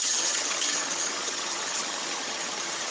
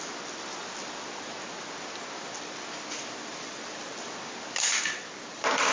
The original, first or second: second